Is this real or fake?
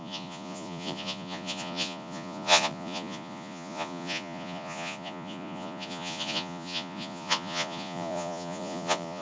fake